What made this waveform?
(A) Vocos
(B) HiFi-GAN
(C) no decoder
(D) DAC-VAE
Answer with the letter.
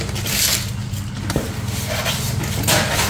C